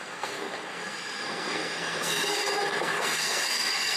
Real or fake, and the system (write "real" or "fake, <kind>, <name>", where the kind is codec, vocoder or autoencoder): fake, codec, SNAC